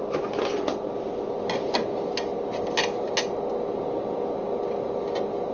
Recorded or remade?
recorded